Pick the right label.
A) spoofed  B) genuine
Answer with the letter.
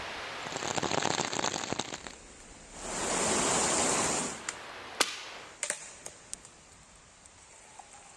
B